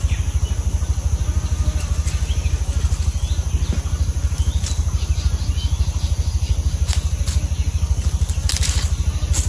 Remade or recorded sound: recorded